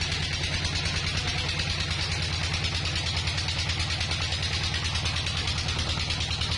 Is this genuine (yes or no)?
yes